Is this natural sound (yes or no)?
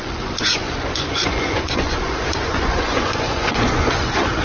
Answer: no